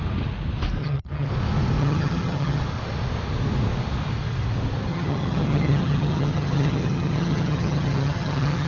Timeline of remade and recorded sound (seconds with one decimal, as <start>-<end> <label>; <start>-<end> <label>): 0.0-0.8 recorded; 0.8-1.3 remade; 1.3-1.8 recorded; 1.8-2.6 remade; 2.6-4.9 recorded; 4.9-8.7 remade